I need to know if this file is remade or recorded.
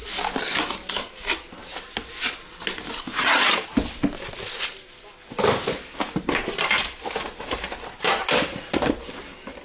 recorded